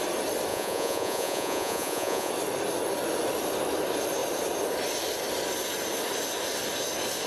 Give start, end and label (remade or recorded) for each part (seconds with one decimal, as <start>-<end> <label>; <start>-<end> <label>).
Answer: 0.0-0.5 recorded; 0.5-2.3 remade; 2.3-7.3 recorded